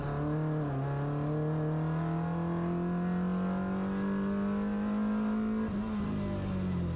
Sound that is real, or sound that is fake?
real